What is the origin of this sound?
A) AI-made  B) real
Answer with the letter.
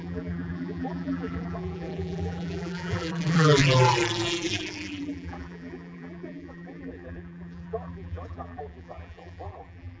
A